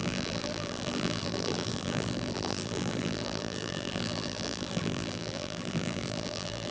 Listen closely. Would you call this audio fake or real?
fake